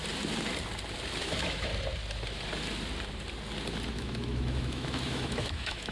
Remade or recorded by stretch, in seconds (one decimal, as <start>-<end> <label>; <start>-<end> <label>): 0.0-1.2 recorded; 1.2-1.7 remade; 1.7-3.9 recorded; 3.9-5.9 remade